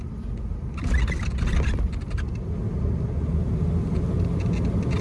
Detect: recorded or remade recorded